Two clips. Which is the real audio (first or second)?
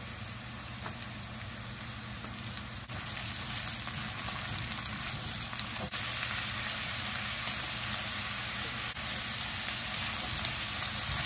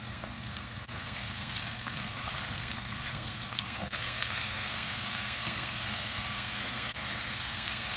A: first